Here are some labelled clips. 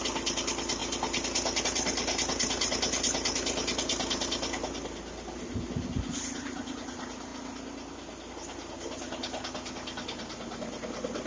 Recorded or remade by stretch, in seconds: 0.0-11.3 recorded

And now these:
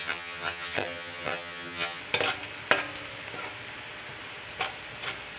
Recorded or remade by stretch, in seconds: 0.0-2.0 remade; 2.0-5.4 recorded